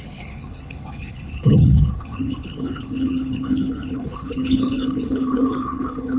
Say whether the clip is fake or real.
fake